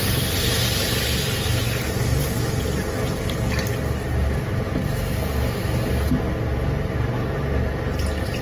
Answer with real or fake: real